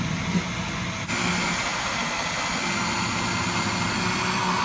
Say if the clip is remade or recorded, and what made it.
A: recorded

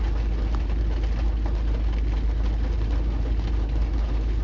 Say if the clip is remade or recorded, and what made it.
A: recorded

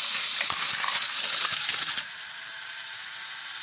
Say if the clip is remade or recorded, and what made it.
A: recorded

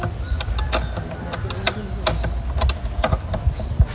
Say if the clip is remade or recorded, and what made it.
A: recorded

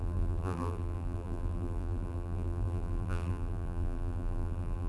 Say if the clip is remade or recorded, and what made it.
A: remade, vocoder, BigVGAN v2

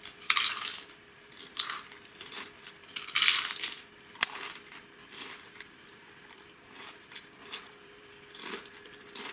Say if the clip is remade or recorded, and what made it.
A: remade, vocoder, BigVGAN v2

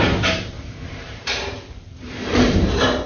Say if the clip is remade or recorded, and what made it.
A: remade, vocoder, BigVGAN v2